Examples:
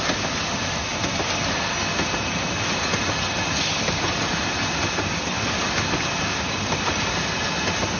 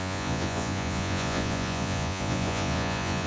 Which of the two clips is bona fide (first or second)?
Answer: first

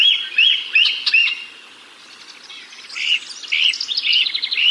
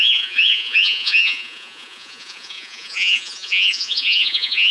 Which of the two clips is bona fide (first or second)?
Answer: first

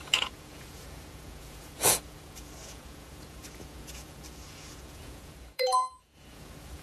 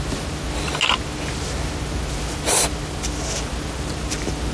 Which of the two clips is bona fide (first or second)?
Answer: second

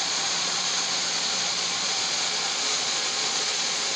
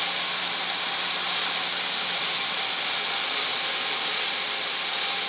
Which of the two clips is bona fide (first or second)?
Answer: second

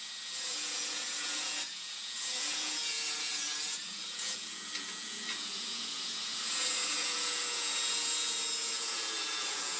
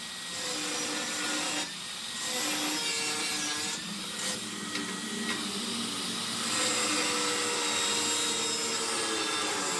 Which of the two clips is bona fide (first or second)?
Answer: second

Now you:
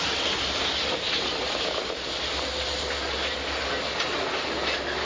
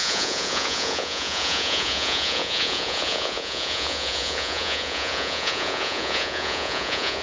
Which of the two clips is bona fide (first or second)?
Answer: first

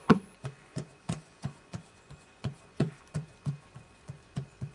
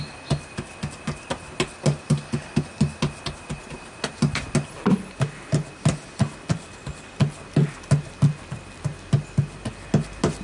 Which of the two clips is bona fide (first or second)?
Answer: second